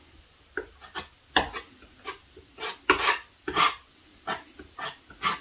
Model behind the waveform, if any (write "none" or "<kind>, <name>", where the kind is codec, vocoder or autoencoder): none